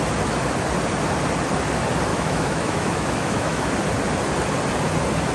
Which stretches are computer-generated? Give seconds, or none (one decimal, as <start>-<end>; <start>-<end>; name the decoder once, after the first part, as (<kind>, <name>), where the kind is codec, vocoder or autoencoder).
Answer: 2.1-3.7 (autoencoder, DAC-VAE)